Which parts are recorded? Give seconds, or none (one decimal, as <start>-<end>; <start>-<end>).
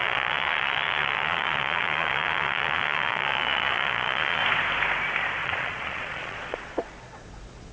4.4-5.4